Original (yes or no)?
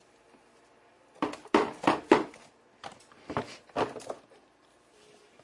yes